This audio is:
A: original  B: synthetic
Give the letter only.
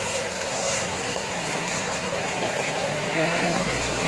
B